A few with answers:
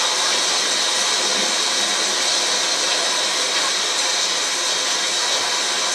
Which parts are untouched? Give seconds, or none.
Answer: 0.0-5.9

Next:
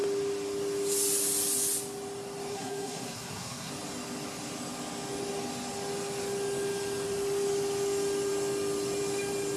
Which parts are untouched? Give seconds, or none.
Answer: 0.0-2.5; 3.7-9.6